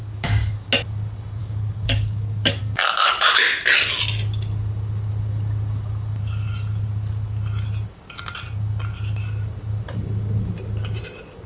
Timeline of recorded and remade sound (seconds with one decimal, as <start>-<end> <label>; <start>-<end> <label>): 0.0-0.7 remade; 0.7-1.4 recorded; 1.4-2.6 remade; 2.6-11.5 recorded